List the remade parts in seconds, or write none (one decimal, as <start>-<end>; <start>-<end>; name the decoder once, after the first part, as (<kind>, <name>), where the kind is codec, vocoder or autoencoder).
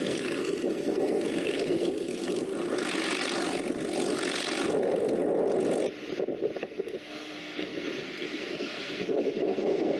0.0-2.5 (codec, SNAC); 6.6-10.0